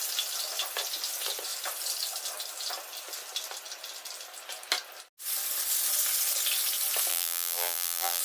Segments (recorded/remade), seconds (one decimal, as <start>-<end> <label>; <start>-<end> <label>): 0.0-7.1 recorded; 7.1-8.2 remade